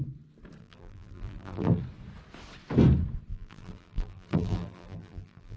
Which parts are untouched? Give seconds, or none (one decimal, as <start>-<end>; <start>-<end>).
0.0-0.6; 1.8-3.3